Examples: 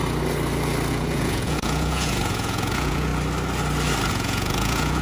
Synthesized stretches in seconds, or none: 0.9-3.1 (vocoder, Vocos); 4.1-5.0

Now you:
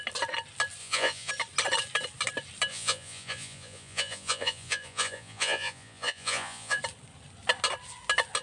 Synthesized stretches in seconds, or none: 0.8-1.3 (vocoder, Vocos); 2.7-6.8

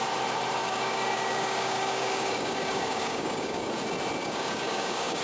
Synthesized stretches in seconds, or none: 0.6-3.7 (codec, DAC); 4.2-5.2

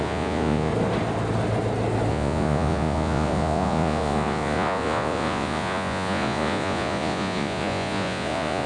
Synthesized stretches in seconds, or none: 0.0-0.7 (vocoder, Vocos); 2.1-8.7

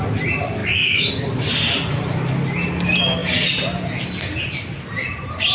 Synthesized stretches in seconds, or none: 0.6-1.1 (autoencoder, DAC-VAE)

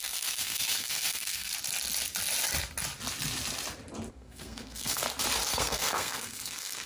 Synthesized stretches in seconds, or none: 0.0-1.5 (codec, SNAC); 4.1-5.0; 5.5-6.9

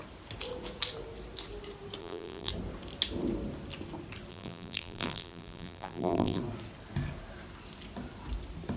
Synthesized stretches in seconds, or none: 2.0-2.5 (vocoder, BigVGAN v2); 4.3-6.4

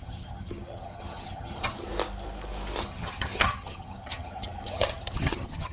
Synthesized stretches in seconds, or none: 0.0-1.9 (vocoder, HiFi-GAN); 2.8-5.7